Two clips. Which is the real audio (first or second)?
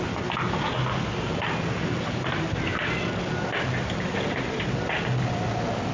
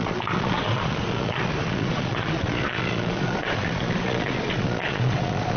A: first